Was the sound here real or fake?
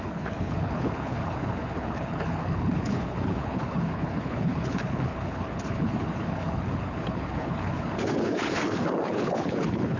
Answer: fake